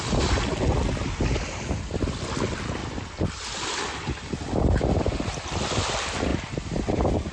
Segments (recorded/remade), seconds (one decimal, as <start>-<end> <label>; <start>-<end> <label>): 0.0-2.8 recorded; 2.8-3.9 remade; 3.9-6.3 recorded; 6.3-7.3 remade

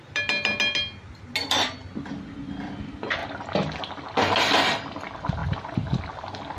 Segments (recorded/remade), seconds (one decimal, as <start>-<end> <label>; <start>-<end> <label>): 0.0-5.4 recorded; 5.4-6.0 remade; 6.0-6.6 recorded

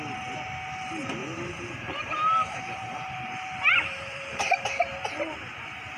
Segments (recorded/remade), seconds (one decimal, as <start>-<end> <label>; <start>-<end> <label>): 0.0-1.2 recorded; 1.2-4.6 remade; 4.6-6.0 recorded

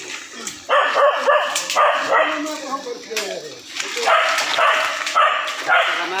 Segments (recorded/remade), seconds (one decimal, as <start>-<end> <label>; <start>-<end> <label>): 0.0-6.2 recorded

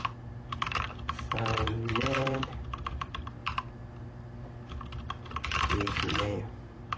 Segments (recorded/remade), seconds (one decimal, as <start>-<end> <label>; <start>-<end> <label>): 0.0-3.4 remade; 3.4-6.0 recorded; 6.0-7.0 remade

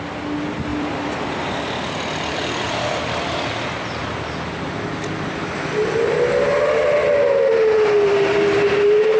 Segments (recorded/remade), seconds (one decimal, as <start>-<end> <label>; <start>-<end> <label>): 0.0-0.7 recorded; 0.7-4.3 remade; 4.3-9.2 recorded

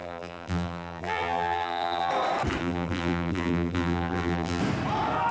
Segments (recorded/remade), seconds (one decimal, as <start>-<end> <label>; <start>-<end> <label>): 0.0-2.1 remade; 2.1-2.6 recorded; 2.6-4.6 remade; 4.6-5.3 recorded

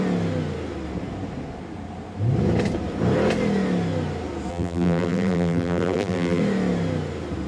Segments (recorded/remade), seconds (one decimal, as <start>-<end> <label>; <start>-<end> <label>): 0.0-4.5 recorded; 4.5-6.4 remade; 6.4-7.5 recorded